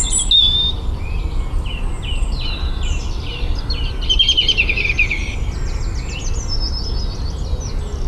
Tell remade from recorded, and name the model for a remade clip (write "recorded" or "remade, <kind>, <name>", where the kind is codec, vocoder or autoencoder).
recorded